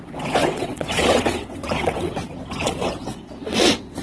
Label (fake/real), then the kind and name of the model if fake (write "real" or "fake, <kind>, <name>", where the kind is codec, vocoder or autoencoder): fake, vocoder, WaveNeXt